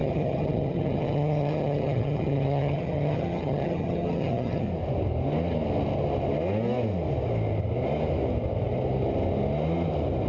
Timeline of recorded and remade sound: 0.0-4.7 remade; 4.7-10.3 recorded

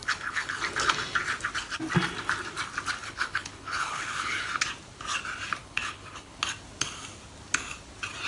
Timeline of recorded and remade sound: 0.0-0.6 remade; 0.6-3.0 recorded; 3.0-4.4 remade; 4.4-5.6 recorded; 5.6-6.4 remade; 6.4-8.3 recorded

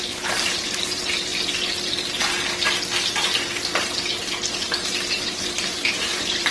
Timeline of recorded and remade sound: 0.0-1.3 remade; 1.3-5.2 recorded; 5.2-6.5 remade